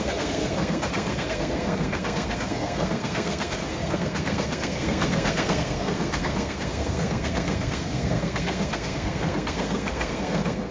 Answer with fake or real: fake